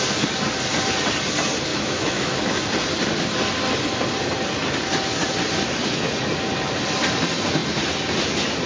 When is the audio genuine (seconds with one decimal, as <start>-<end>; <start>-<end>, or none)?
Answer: 0.0-1.7; 2.6-8.7